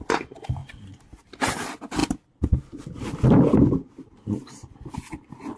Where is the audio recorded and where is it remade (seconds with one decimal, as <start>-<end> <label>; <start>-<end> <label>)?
0.0-5.6 recorded